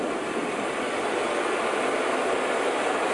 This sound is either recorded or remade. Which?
recorded